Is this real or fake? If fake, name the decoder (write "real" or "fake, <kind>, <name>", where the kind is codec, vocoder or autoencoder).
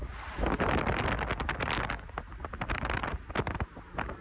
real